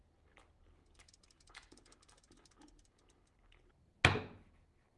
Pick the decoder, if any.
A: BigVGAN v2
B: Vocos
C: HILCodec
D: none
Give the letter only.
D